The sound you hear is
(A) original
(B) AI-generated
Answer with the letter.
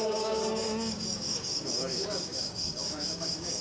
B